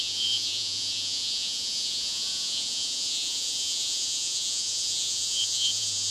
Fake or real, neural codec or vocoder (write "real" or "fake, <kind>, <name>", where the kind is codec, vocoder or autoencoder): fake, vocoder, Vocos